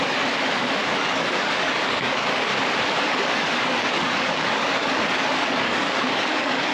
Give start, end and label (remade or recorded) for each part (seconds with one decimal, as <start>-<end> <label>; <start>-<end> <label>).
0.0-2.5 remade; 2.5-3.0 recorded; 3.0-6.7 remade